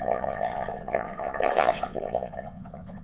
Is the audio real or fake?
fake